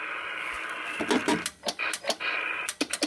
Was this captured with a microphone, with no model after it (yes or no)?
yes